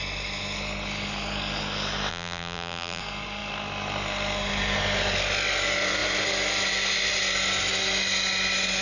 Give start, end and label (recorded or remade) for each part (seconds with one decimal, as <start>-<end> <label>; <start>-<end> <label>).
0.0-2.1 recorded; 2.1-3.0 remade; 3.0-8.8 recorded